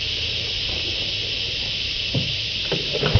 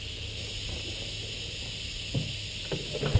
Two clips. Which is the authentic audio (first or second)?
second